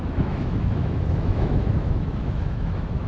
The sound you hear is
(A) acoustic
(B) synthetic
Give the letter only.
B